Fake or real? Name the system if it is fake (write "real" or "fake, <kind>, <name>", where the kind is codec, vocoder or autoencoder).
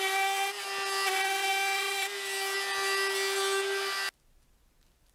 real